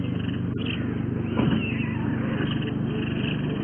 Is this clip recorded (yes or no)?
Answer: yes